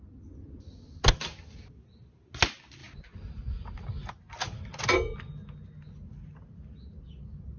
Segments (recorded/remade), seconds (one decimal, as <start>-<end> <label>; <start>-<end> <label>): 0.0-7.6 recorded